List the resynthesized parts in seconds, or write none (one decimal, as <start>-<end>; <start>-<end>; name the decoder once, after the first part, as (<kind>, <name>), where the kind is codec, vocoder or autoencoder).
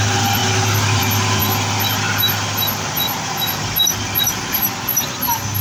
none